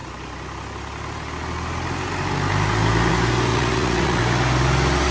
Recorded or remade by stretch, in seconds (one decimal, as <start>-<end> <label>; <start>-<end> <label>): 0.0-3.5 recorded; 3.5-4.2 remade; 4.2-5.1 recorded